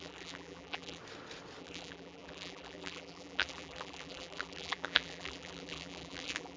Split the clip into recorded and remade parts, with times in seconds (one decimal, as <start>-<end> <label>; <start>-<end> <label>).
0.0-1.0 remade; 1.0-1.6 recorded; 1.6-6.6 remade